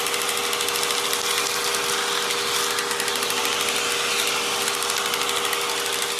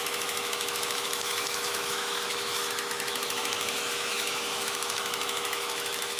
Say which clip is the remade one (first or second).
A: second